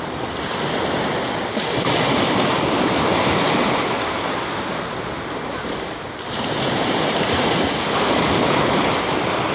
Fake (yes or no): yes